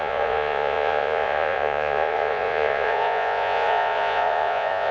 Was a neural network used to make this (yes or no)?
yes